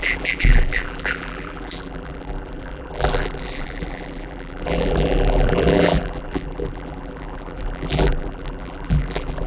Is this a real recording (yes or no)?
no